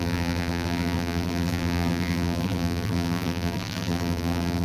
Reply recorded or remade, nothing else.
remade